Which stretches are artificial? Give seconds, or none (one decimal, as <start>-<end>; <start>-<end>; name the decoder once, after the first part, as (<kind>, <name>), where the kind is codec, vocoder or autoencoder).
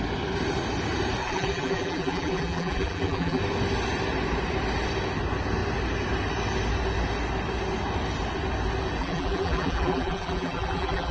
1.2-3.4 (vocoder, BigVGAN v2); 9.0-11.1